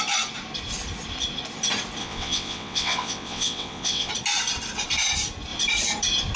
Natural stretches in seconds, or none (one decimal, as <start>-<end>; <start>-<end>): 0.0-2.0; 4.1-6.4